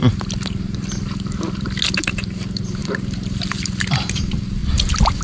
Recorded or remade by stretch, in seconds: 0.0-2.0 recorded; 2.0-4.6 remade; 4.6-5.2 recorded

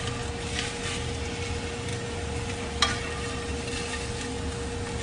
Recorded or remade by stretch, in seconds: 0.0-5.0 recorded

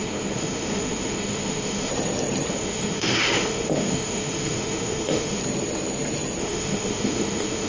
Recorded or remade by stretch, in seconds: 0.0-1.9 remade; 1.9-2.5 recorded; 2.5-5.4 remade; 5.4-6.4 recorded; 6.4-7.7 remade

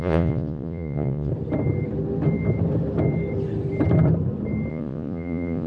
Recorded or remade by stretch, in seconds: 0.0-1.3 remade; 1.3-4.7 recorded; 4.7-5.7 remade

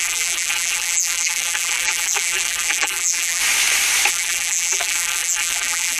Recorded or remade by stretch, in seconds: 0.0-3.4 remade; 3.4-4.1 recorded; 4.1-6.0 remade

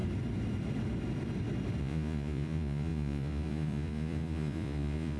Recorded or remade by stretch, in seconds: 0.0-1.8 recorded; 1.8-5.2 remade